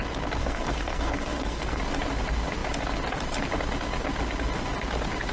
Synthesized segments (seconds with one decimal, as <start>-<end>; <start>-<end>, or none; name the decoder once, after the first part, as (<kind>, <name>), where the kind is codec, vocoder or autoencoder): 0.4-1.8 (codec, SNAC)